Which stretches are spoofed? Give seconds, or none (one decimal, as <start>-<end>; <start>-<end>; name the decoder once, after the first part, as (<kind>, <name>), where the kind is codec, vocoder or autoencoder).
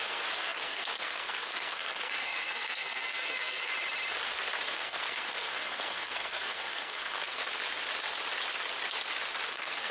0.0-3.7 (codec, SNAC); 4.7-7.4; 9.5-9.9